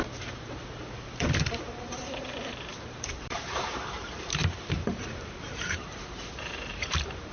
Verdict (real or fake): fake